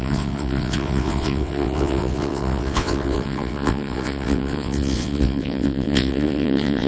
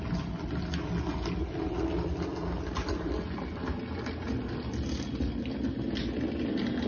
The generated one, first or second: first